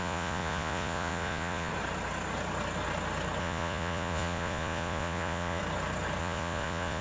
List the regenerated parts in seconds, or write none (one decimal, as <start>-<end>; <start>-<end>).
0.0-1.7; 3.4-5.6; 6.2-7.0